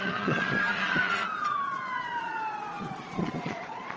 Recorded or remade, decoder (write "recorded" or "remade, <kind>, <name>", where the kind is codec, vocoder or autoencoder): remade, vocoder, Vocos